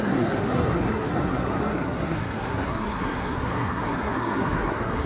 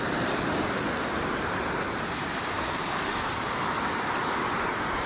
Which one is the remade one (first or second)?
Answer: first